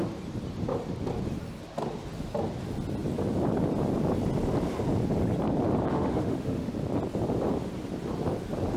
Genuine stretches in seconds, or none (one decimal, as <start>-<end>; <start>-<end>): 0.0-5.9; 6.7-8.8